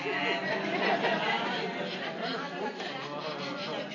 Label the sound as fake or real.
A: real